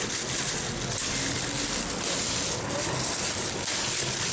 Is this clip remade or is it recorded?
recorded